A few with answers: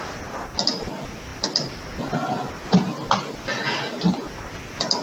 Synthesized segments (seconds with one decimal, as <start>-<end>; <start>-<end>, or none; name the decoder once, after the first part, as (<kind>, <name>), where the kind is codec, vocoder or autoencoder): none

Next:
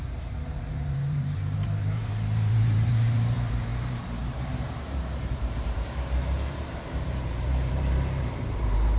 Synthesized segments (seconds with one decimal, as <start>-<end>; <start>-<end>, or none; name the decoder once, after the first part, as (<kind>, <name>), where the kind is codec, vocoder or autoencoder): 0.0-9.0 (vocoder, BigVGAN v2)

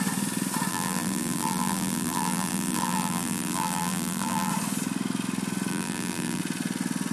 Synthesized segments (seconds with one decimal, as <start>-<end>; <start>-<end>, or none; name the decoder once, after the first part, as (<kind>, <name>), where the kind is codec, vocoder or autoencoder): 0.7-4.5 (vocoder, BigVGAN v2); 5.7-6.4

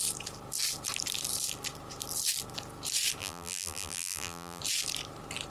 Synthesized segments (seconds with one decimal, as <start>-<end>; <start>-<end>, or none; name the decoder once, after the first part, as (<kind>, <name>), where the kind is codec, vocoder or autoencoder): 3.2-4.6 (vocoder, BigVGAN v2)

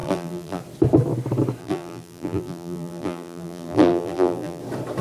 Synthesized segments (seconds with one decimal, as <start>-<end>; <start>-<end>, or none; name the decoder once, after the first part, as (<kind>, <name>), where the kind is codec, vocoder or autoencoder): 0.0-0.6 (vocoder, BigVGAN v2); 1.6-4.6

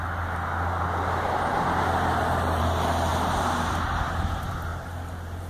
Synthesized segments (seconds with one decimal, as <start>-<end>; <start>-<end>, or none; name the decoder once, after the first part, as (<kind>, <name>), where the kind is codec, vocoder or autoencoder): 4.7-5.5 (vocoder, BigVGAN v2)